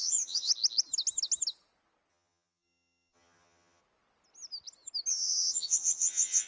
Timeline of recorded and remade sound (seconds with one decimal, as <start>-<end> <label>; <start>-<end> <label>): 0.0-0.5 remade; 0.5-2.1 recorded; 2.1-3.8 remade; 3.8-5.1 recorded; 5.1-6.5 remade